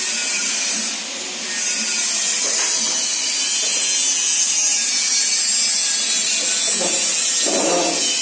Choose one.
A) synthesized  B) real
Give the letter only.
B